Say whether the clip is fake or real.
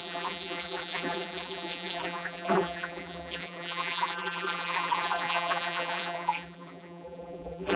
fake